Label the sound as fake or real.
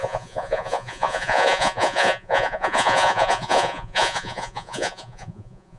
fake